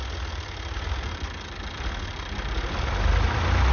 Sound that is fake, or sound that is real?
real